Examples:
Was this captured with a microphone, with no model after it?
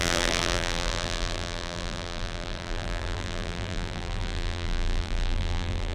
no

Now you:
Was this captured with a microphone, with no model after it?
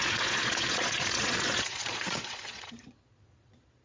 no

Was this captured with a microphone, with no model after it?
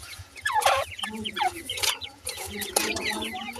no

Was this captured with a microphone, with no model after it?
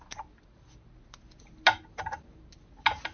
yes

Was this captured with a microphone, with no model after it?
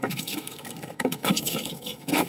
no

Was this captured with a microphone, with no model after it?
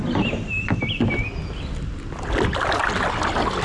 yes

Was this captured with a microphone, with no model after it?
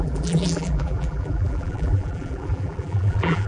no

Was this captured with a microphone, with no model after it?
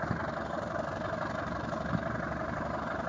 yes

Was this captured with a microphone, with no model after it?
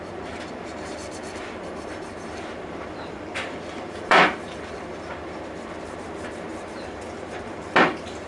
no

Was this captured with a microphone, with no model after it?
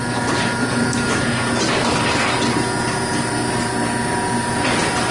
yes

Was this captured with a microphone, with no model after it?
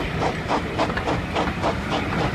yes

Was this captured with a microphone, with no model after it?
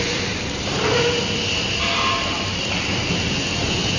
yes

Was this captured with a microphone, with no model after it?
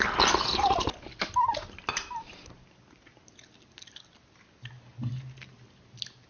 yes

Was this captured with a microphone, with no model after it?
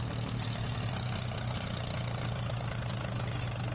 yes